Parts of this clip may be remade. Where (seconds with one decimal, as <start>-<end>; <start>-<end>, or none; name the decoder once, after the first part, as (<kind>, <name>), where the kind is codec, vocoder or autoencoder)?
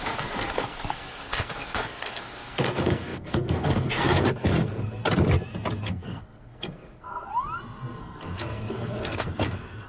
0.0-5.0 (codec, SNAC); 5.8-7.3; 8.0-9.9